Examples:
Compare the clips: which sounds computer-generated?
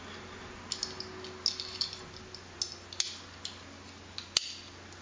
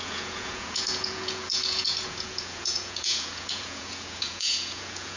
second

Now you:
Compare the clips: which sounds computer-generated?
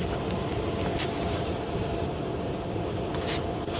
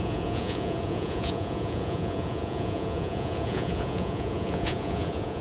second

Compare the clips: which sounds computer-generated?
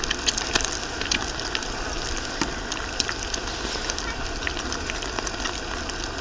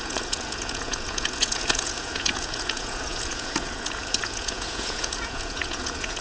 second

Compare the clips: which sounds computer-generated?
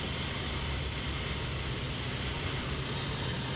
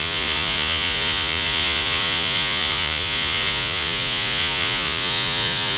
second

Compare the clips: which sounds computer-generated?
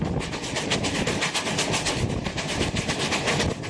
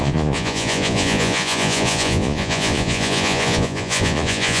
second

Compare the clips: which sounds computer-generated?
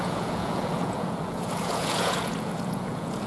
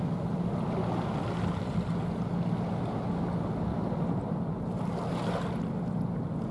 first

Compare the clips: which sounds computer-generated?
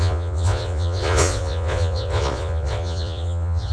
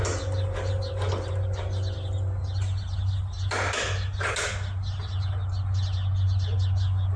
first